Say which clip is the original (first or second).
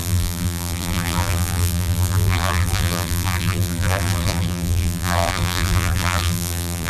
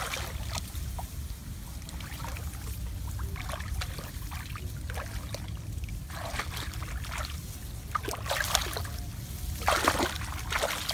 second